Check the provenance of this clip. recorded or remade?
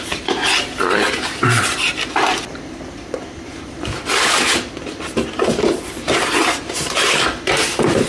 remade